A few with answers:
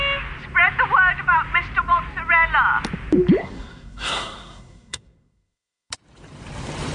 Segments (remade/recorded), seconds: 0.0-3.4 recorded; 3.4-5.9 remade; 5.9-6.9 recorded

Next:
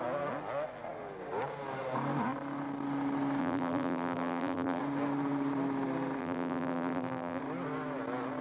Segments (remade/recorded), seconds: 0.0-3.4 recorded; 3.4-4.8 remade; 4.8-6.2 recorded; 6.2-7.4 remade; 7.4-8.4 recorded

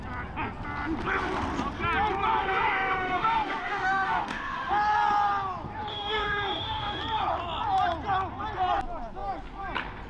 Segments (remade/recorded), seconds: 0.0-2.4 recorded; 2.4-4.7 remade; 4.7-5.9 recorded; 5.9-7.0 remade; 7.0-10.1 recorded

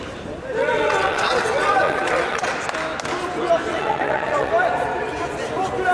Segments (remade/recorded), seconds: 0.0-0.6 recorded; 0.6-2.5 remade; 2.5-3.7 recorded; 3.7-4.5 remade; 4.5-5.9 recorded